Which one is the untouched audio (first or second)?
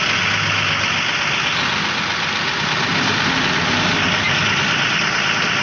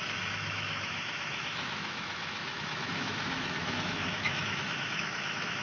first